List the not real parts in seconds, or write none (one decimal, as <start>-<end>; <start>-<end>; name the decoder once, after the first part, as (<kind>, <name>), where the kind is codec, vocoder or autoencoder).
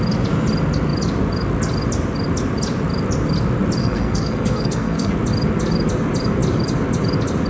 3.8-5.1 (codec, SNAC)